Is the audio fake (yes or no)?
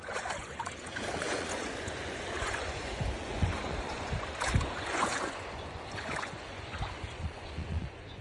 yes